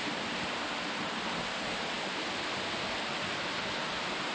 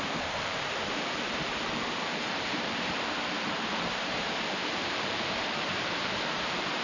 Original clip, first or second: first